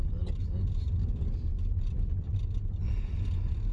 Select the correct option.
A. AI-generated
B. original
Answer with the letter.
B